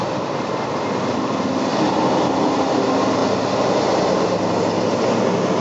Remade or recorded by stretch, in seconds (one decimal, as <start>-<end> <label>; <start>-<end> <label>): 0.0-5.6 recorded